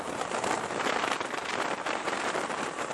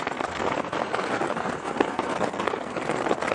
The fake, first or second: second